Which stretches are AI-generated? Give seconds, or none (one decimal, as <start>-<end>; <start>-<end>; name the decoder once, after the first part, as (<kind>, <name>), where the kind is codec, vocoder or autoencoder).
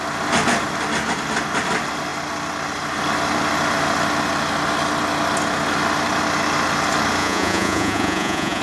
7.2-8.6 (vocoder, Vocos)